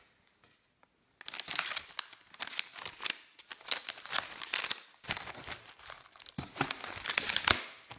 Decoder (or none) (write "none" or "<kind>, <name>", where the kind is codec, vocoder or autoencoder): none